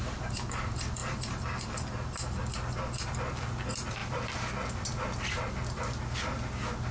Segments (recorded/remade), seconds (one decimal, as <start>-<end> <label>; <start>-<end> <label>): 0.0-6.9 recorded